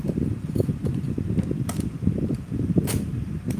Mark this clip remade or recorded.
remade